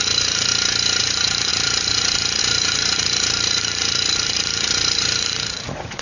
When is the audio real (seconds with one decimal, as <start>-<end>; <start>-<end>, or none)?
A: 0.5-1.0